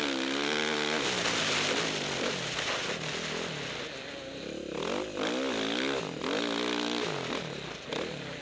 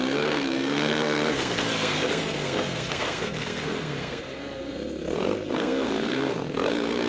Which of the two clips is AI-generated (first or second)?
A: second